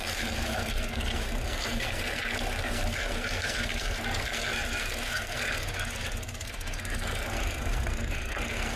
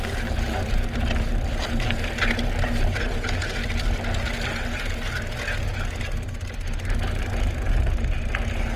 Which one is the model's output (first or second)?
first